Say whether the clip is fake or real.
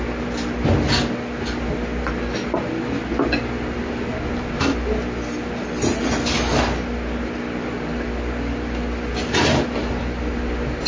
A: real